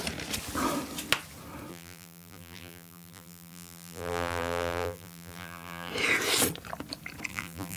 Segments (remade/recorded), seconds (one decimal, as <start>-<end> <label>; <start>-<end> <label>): 0.0-1.7 recorded; 1.7-5.9 remade; 5.9-7.3 recorded; 7.3-7.8 remade